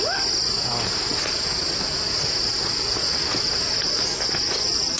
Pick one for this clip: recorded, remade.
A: recorded